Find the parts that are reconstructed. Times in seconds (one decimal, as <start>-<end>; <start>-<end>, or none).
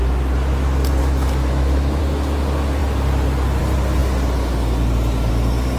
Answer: 1.0-2.0